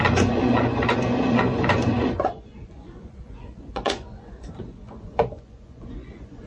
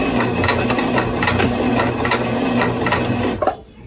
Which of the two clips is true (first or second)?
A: second